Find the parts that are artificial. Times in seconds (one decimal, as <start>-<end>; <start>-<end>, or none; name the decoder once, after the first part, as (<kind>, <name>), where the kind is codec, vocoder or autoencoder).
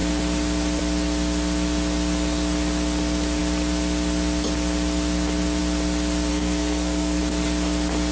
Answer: 6.3-7.2 (codec, SNAC)